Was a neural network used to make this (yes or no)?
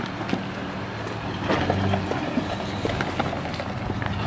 no